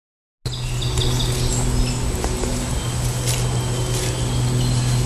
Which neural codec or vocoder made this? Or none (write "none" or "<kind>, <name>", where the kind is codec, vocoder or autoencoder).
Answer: none